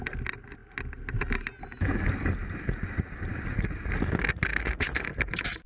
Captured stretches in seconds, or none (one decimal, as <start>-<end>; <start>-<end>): 0.0-4.5